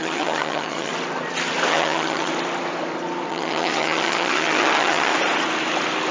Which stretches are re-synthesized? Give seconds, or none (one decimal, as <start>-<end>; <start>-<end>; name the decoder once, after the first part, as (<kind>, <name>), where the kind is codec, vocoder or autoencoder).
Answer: 0.0-0.9 (vocoder, HiFi-GAN); 1.7-2.3; 3.3-5.1